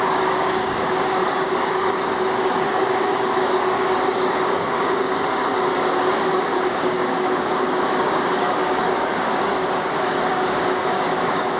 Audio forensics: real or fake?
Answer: fake